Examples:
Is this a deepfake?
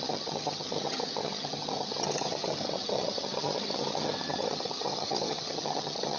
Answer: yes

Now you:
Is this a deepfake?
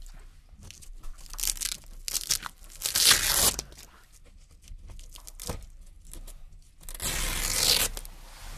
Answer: no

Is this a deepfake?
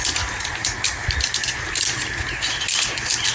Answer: no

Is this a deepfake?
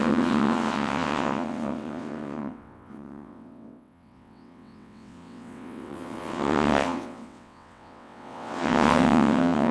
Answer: yes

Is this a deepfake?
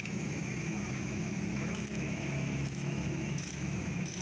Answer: yes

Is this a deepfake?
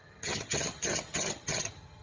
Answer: yes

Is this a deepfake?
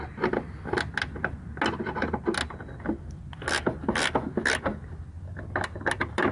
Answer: no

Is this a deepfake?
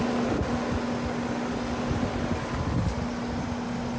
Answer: no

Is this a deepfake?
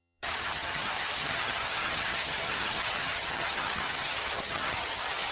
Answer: yes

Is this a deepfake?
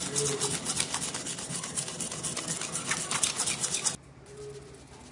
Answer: no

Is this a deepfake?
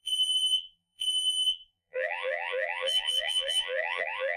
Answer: yes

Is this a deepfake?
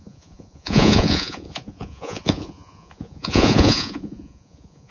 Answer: yes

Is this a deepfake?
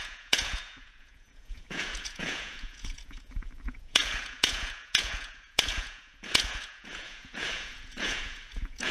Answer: yes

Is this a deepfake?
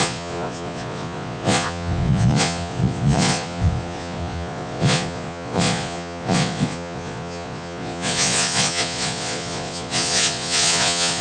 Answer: yes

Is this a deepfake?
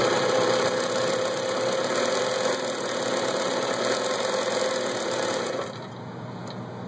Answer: no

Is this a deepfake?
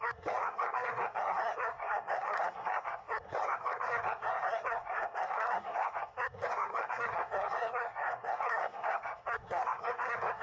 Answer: yes